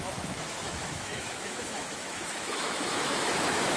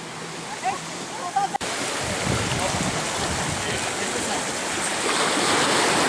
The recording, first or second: second